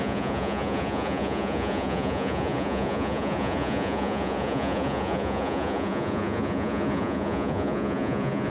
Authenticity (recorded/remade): remade